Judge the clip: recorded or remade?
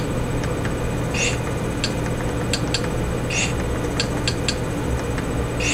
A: recorded